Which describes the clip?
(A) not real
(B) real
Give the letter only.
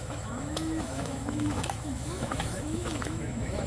A